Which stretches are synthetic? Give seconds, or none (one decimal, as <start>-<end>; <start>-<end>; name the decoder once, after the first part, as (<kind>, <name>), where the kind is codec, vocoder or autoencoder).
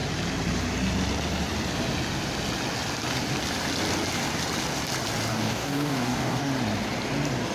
5.3-6.5 (codec, DAC)